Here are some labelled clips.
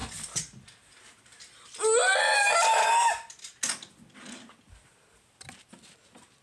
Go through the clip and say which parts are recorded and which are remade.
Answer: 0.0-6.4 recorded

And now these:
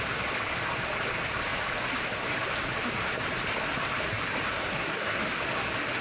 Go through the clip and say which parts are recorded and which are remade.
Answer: 0.0-4.5 recorded; 4.5-5.2 remade; 5.2-6.0 recorded

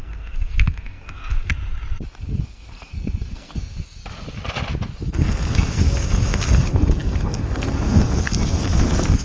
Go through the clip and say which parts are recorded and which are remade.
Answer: 0.0-1.5 remade; 1.5-2.2 recorded; 2.2-4.0 remade; 4.0-5.0 recorded; 5.0-9.2 remade

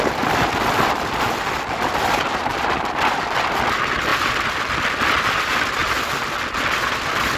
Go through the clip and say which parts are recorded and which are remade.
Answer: 0.0-7.4 recorded

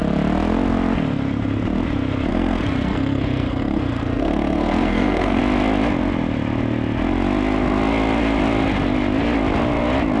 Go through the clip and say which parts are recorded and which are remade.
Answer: 0.0-2.3 recorded; 2.3-5.4 remade; 5.4-10.2 recorded

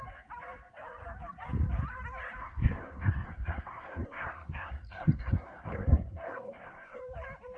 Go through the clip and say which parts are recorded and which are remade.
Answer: 0.0-2.4 recorded; 2.4-7.0 remade; 7.0-7.6 recorded

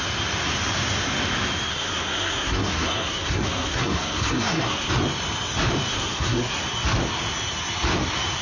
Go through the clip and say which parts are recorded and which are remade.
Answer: 0.0-1.7 recorded; 1.7-4.9 remade; 4.9-5.9 recorded; 5.9-6.6 remade; 6.6-8.4 recorded

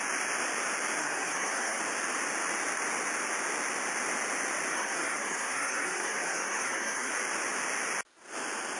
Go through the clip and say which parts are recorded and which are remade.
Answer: 0.0-1.0 recorded; 1.0-1.8 remade; 1.8-4.7 recorded; 4.7-7.1 remade; 7.1-8.8 recorded